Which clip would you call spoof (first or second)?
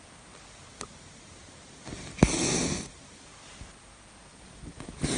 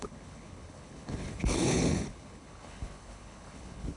second